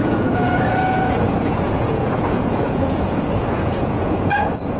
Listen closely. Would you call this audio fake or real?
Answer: fake